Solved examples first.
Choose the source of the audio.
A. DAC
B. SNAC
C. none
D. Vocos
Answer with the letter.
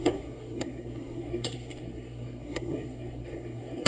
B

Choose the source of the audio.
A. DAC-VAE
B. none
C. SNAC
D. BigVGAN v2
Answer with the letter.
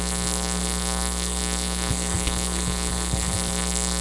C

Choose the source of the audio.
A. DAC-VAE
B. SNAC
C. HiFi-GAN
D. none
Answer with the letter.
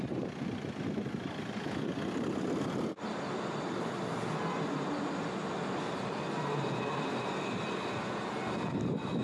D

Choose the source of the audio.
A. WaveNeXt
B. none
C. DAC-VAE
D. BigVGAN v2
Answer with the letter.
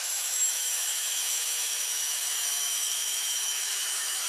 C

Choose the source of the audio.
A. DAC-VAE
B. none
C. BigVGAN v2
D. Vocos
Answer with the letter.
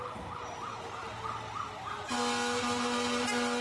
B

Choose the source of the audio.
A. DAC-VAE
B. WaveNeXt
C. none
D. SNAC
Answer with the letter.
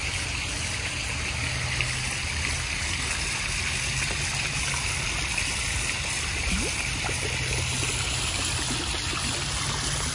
C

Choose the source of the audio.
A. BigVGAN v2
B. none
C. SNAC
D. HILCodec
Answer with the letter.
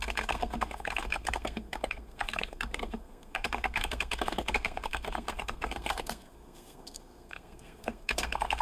C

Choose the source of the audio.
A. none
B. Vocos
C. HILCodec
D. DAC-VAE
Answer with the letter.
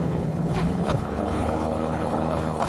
C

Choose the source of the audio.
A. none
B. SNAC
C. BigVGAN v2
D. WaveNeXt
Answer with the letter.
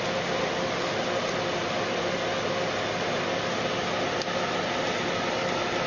A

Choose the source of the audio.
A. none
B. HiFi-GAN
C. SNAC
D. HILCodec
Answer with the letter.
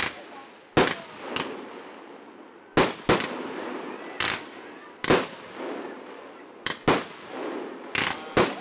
A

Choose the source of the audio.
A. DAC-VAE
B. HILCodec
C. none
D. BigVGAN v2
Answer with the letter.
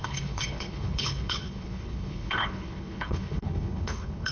B